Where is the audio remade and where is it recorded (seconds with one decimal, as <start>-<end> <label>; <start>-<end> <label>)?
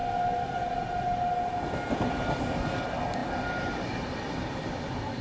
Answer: 0.0-5.2 recorded